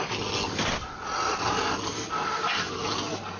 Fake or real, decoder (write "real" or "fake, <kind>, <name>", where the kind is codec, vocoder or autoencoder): real